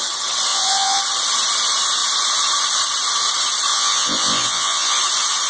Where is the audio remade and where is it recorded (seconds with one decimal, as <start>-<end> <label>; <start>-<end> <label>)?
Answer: 0.0-0.5 recorded; 0.5-1.0 remade; 1.0-3.7 recorded; 3.7-5.0 remade; 5.0-5.5 recorded